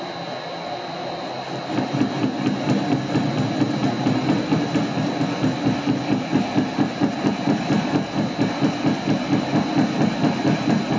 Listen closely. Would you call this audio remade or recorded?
recorded